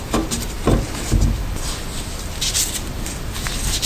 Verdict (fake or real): real